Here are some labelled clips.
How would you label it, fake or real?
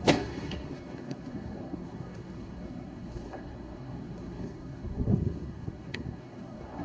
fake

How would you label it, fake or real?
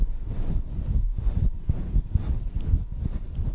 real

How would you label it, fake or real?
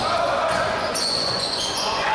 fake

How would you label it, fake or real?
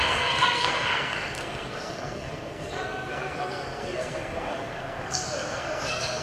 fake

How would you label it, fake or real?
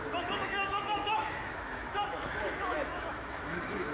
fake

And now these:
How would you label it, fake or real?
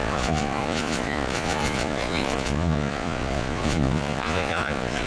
fake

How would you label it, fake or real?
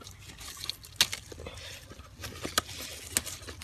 real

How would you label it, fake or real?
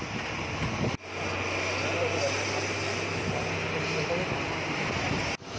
real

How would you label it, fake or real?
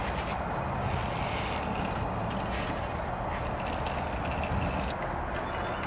real